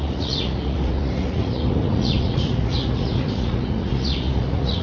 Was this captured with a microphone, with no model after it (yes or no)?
no